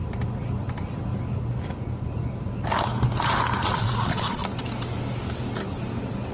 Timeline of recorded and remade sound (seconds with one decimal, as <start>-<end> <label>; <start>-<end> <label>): 0.0-3.7 recorded; 3.7-4.4 remade; 4.4-6.3 recorded